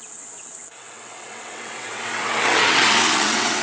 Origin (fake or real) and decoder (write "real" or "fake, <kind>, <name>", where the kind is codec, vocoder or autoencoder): fake, vocoder, WaveNeXt